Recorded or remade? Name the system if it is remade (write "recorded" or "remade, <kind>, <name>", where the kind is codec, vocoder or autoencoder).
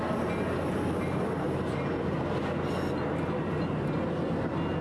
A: recorded